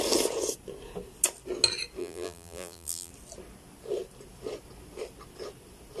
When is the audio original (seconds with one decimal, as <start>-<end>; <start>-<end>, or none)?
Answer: 0.0-2.0; 3.1-6.0